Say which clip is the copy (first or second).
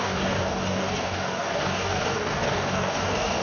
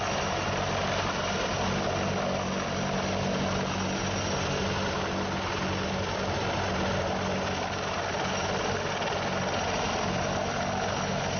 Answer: first